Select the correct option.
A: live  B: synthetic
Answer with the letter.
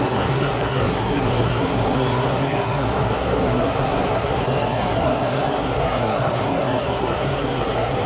B